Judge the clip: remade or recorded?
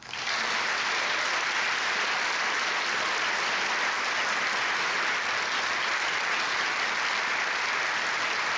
recorded